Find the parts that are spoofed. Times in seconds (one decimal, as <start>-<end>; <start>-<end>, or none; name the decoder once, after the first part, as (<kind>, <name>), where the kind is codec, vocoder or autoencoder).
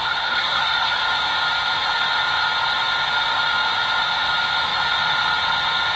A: 0.0-1.0 (codec, SNAC)